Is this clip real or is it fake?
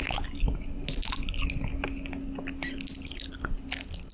real